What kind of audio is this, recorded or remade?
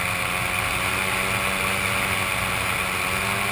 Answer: recorded